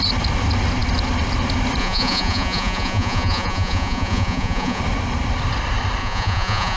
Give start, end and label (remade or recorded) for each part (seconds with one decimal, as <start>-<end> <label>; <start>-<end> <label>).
0.0-1.8 recorded; 1.8-4.8 remade; 4.8-6.0 recorded; 6.0-6.8 remade